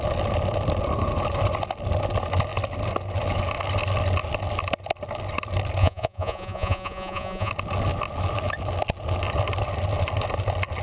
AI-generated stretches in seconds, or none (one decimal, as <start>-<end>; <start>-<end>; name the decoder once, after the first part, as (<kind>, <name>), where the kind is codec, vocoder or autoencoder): 5.8-7.5 (vocoder, Vocos)